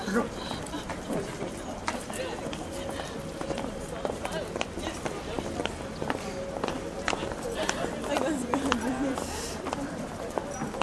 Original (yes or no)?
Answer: yes